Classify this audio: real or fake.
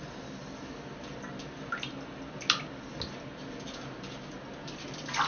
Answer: real